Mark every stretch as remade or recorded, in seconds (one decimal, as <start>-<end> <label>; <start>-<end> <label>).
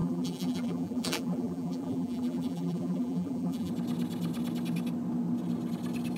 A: 0.0-3.7 remade; 3.7-6.2 recorded